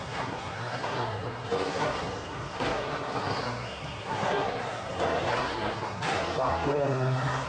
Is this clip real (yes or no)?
no